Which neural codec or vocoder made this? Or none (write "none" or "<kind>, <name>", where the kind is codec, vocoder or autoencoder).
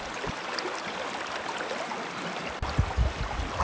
none